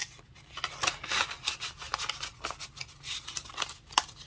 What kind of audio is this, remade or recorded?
recorded